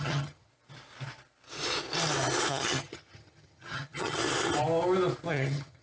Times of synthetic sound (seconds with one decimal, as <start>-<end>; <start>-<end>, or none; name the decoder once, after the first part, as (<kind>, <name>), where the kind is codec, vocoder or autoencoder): 0.0-0.5 (vocoder, HiFi-GAN); 2.5-4.2; 5.3-5.8